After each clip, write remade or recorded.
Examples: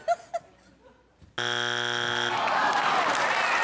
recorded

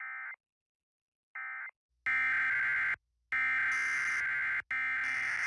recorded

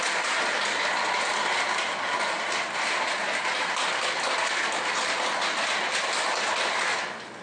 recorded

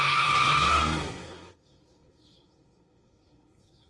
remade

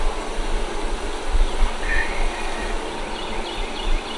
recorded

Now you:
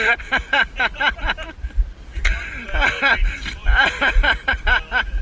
recorded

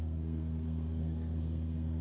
remade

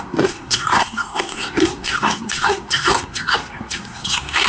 remade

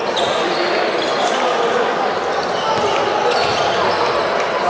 recorded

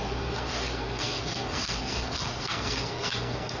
remade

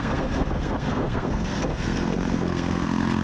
remade